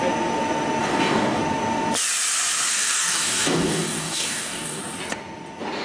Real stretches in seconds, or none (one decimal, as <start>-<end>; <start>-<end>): 0.0-0.8; 1.4-2.7; 4.8-5.8